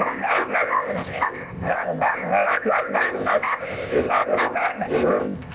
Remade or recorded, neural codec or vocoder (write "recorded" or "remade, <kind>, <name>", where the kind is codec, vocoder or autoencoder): remade, codec, ZipCodec